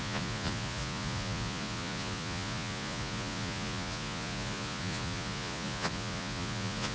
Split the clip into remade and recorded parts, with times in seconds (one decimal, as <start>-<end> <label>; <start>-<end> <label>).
0.0-6.9 remade